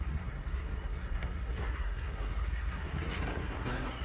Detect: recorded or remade remade